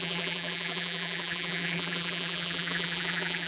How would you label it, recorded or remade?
remade